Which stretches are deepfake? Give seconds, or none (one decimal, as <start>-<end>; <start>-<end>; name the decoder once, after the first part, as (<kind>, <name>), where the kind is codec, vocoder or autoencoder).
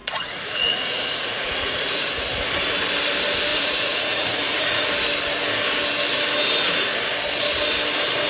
0.0-2.1 (vocoder, Vocos); 3.5-4.9